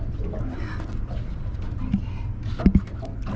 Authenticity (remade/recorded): recorded